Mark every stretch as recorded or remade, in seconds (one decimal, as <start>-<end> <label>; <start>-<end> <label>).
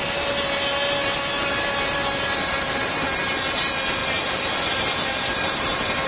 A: 0.0-4.0 recorded; 4.0-6.1 remade